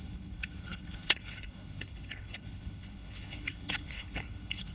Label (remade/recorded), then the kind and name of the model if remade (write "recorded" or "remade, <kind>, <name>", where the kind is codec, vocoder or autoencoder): remade, codec, HILCodec